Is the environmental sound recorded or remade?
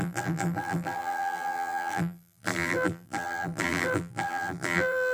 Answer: remade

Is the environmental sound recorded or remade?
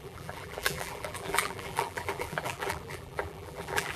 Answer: remade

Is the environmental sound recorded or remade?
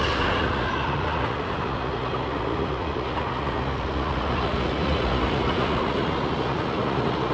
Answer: remade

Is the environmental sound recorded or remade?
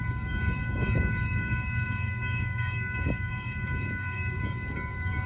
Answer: remade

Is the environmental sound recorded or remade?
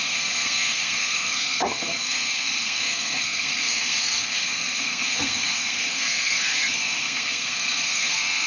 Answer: remade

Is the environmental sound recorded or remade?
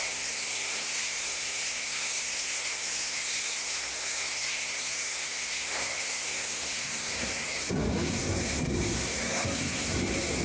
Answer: remade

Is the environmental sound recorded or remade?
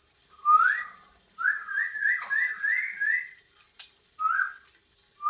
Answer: recorded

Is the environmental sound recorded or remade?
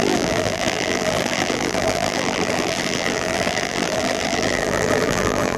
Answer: remade